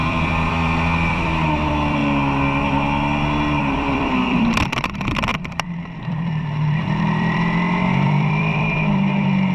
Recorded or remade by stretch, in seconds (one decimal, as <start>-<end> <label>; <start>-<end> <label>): 0.0-2.0 remade; 2.0-3.6 recorded; 3.6-9.5 remade